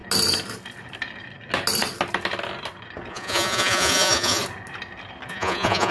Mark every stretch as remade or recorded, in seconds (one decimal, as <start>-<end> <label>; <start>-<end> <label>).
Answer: 0.0-3.1 recorded; 3.1-4.4 remade; 4.4-5.3 recorded; 5.3-5.9 remade